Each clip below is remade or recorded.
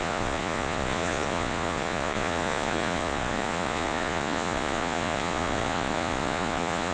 remade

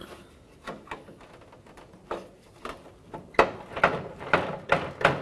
recorded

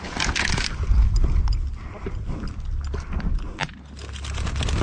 recorded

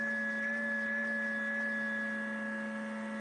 recorded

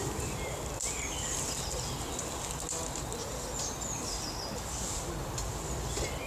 recorded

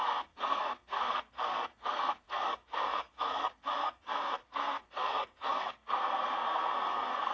remade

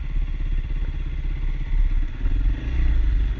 recorded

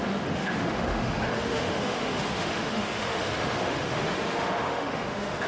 remade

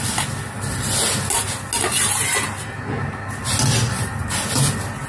recorded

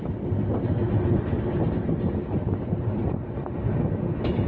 recorded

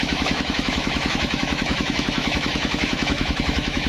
remade